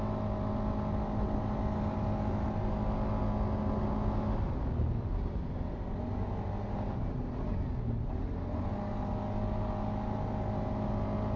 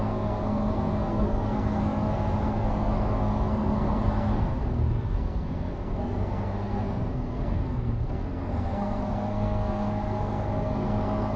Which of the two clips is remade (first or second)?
second